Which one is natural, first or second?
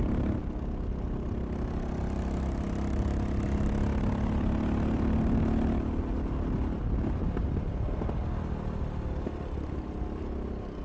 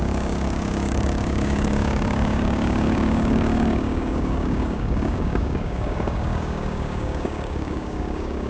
first